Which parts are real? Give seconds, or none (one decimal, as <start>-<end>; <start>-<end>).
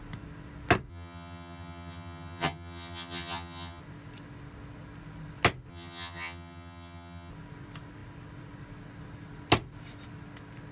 0.0-0.9; 3.8-5.7; 7.3-10.7